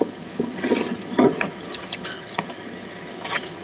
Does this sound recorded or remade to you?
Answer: remade